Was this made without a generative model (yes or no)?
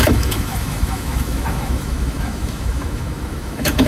no